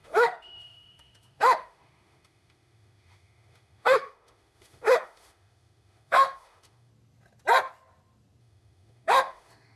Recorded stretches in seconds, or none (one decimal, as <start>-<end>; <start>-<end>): 6.9-8.4